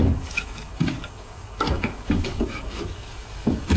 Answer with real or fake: fake